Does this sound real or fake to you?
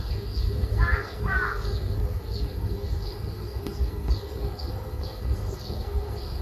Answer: fake